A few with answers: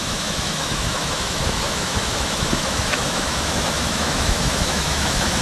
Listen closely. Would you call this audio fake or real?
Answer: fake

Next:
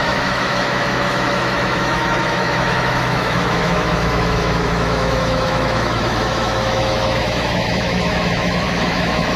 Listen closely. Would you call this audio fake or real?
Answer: fake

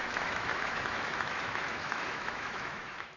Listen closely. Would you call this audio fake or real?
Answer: fake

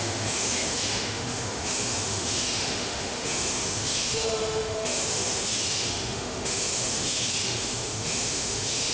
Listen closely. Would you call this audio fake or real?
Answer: fake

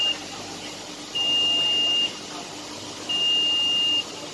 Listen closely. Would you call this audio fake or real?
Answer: real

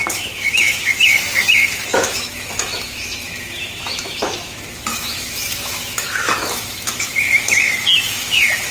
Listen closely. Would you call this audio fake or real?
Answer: fake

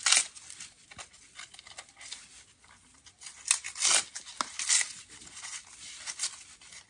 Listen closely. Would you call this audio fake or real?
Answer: real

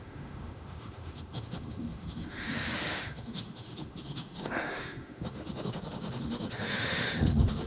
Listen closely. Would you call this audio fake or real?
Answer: fake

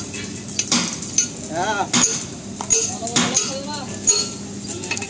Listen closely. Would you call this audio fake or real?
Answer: real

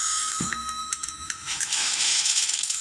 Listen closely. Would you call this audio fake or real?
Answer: fake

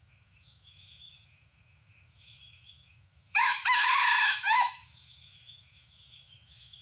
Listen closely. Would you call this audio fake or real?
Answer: fake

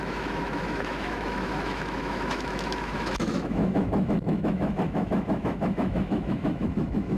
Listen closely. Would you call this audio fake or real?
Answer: fake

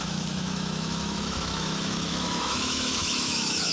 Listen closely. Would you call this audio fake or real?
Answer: fake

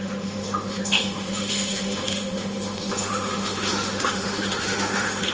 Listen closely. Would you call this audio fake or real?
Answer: fake